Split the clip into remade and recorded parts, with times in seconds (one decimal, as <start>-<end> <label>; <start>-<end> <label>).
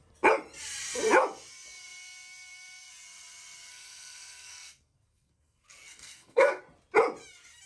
0.0-3.7 recorded; 3.7-6.6 remade; 6.6-7.7 recorded